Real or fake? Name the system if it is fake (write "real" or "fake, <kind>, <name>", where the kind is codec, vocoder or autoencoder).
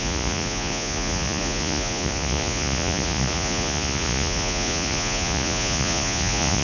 fake, vocoder, Vocos